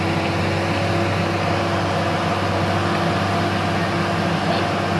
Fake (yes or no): no